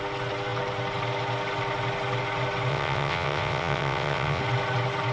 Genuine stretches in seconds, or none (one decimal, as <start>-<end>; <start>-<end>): 0.0-2.7; 4.4-5.1